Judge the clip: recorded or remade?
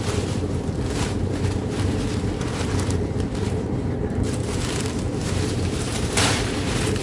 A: remade